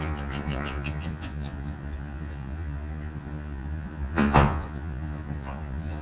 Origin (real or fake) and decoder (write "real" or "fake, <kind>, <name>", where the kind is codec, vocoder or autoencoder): fake, vocoder, Vocos